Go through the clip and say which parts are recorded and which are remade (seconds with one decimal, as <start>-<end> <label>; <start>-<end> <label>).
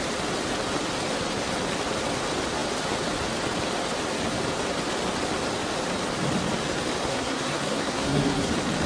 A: 0.0-7.1 recorded; 7.1-8.5 remade; 8.5-8.9 recorded